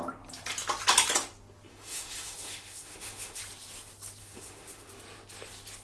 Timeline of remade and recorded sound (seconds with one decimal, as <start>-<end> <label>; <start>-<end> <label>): 0.0-1.7 recorded; 1.7-3.4 remade; 3.4-4.2 recorded; 4.2-4.9 remade; 4.9-5.8 recorded